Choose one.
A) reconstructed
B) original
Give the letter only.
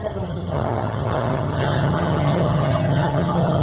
A